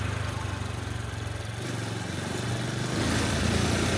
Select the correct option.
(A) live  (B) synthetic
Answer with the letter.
A